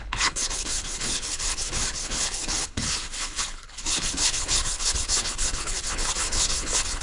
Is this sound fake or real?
fake